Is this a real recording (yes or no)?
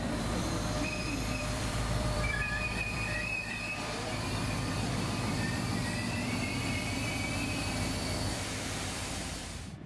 no